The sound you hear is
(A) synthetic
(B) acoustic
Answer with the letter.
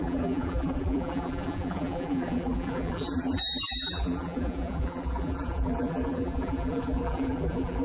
A